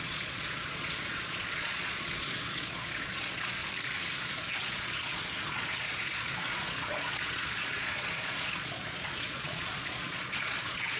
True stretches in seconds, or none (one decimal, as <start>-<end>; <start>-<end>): 3.6-4.2